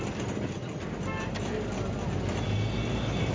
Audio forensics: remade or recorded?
recorded